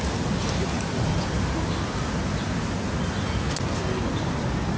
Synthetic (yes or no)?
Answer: no